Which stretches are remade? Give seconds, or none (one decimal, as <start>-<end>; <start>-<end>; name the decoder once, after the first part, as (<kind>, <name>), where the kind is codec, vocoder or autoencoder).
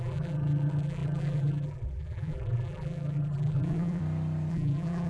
0.0-4.0 (vocoder, BigVGAN v2); 4.5-5.1